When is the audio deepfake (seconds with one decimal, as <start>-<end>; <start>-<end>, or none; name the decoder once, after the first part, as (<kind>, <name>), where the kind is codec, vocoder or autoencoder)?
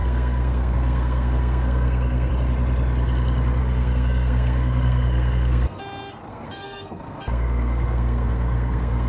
0.0-2.3 (codec, SNAC); 3.6-5.8; 6.3-9.1